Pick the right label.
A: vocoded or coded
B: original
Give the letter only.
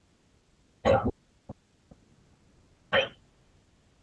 B